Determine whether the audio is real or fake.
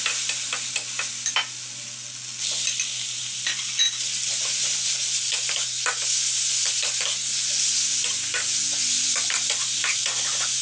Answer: real